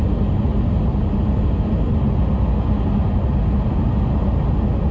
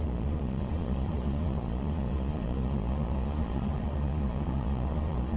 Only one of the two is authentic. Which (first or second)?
first